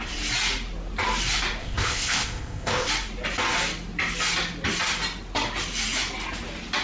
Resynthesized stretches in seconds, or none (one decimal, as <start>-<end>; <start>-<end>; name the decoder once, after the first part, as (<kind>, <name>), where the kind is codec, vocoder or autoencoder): 1.6-2.9 (codec, ZipCodec)